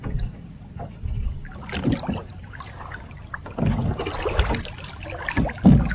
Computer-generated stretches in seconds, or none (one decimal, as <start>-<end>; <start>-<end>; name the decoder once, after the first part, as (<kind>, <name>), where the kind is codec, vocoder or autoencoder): 2.2-2.7 (vocoder, BigVGAN v2)